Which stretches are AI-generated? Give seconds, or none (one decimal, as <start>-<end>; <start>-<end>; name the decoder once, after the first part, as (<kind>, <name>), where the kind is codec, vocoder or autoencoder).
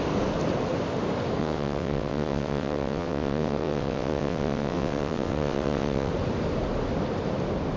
1.4-6.1 (vocoder, WaveNeXt)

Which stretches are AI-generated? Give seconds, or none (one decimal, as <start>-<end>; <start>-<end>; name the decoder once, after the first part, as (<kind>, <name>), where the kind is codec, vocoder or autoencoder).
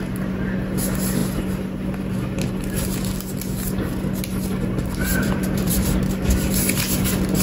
5.1-6.5 (vocoder, BigVGAN v2)